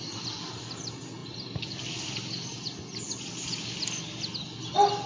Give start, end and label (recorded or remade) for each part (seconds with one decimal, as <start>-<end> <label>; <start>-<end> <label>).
0.0-5.1 recorded